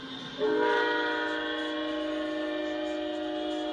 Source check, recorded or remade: recorded